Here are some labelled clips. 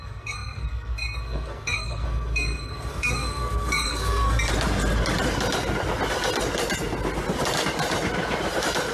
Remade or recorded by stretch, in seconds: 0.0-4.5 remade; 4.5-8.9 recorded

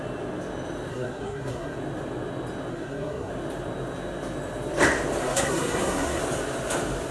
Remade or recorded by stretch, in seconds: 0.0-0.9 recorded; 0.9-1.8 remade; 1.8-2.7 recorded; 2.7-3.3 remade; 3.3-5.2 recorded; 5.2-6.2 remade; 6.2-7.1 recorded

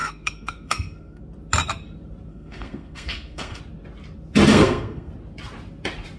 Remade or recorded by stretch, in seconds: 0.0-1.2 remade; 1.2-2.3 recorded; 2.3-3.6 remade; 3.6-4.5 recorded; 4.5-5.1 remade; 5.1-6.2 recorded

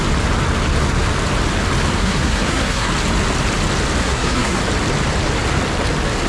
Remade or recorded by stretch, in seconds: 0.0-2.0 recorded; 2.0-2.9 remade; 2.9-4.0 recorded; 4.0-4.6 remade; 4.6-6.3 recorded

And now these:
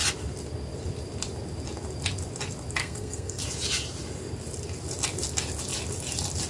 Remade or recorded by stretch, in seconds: 0.0-2.8 recorded; 2.8-3.4 remade; 3.4-6.5 recorded

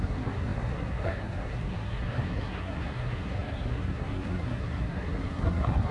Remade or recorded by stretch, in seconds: 0.0-5.9 remade